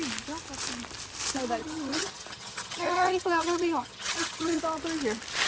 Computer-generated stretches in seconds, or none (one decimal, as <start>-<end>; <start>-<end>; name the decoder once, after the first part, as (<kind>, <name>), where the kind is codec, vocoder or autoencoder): 1.6-4.6 (vocoder, HiFi-GAN)